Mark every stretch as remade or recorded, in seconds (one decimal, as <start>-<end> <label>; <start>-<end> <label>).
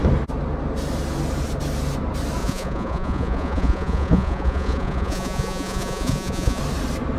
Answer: 0.0-2.4 recorded; 2.4-6.6 remade; 6.6-7.2 recorded